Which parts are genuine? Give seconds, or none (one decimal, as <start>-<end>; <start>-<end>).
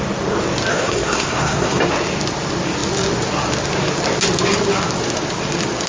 0.0-0.7; 1.8-5.9